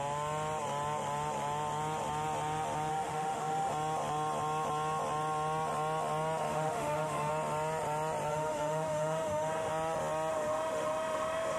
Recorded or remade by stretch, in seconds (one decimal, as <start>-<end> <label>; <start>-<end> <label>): 0.0-2.9 recorded; 2.9-3.7 remade; 3.7-6.5 recorded; 6.5-7.3 remade; 7.3-8.3 recorded; 8.3-9.7 remade; 9.7-10.3 recorded; 10.3-11.6 remade